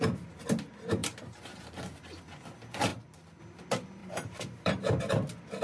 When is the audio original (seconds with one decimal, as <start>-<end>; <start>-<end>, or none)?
0.0-1.0; 1.8-2.9; 3.4-4.0; 5.0-5.6